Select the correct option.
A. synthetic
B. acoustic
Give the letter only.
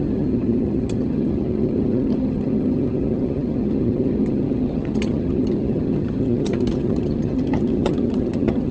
A